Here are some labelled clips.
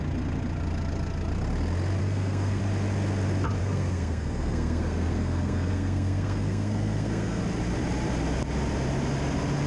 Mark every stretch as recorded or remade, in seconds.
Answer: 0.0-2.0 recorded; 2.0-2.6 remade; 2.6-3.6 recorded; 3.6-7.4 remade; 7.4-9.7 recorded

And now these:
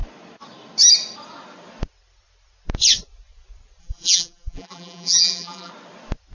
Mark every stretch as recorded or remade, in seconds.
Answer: 0.0-3.8 recorded; 3.8-5.7 remade; 5.7-6.3 recorded